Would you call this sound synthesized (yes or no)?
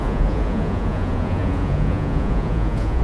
yes